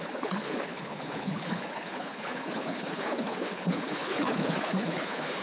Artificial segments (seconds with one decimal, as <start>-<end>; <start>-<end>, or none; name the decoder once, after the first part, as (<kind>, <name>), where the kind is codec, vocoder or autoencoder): 0.0-5.4 (codec, HILCodec)